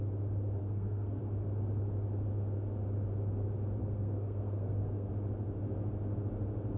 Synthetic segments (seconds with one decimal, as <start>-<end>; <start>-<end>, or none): 0.6-1.2; 3.8-5.1

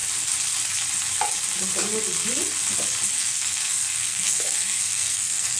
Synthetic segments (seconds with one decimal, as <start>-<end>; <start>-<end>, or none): 3.1-5.6

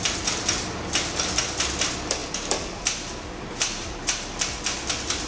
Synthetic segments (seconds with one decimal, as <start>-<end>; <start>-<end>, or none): 0.0-5.3

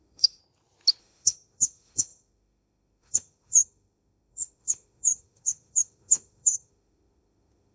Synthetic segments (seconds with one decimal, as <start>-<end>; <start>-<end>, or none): 0.0-0.4; 1.0-7.7